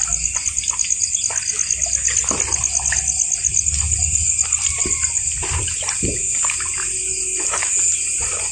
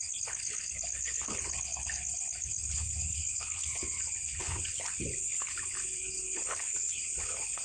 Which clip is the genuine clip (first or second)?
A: first